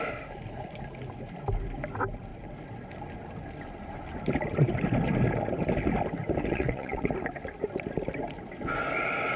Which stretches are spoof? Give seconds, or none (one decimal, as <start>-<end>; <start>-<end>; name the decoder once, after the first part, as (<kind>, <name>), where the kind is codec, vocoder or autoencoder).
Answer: 6.5-7.1 (vocoder, WaveNeXt)